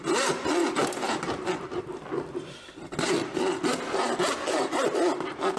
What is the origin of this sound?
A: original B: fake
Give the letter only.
A